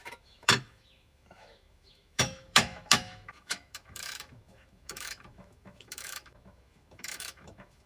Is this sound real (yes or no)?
no